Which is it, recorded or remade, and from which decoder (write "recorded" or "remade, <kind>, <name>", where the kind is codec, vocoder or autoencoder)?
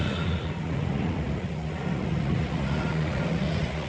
remade, vocoder, Vocos